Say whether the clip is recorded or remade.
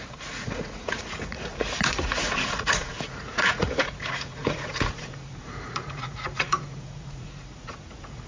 remade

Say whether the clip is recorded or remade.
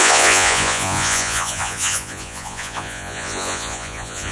remade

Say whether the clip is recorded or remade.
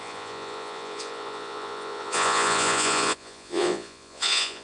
remade